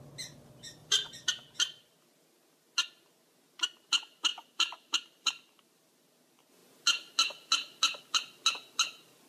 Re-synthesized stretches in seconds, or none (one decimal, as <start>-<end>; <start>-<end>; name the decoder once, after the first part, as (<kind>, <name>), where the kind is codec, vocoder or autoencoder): 0.8-1.3 (vocoder, BigVGAN v2); 4.3-6.1